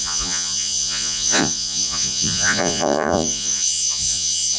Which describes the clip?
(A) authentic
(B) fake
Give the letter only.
B